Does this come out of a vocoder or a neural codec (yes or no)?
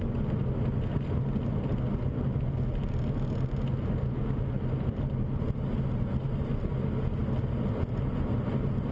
no